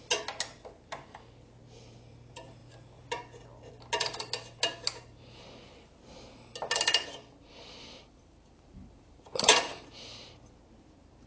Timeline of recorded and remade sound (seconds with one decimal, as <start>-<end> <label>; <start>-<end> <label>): 0.0-7.9 recorded; 7.9-9.9 remade; 9.9-11.3 recorded